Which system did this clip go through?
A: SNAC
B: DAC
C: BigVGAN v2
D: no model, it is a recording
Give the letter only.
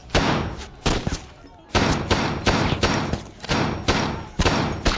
D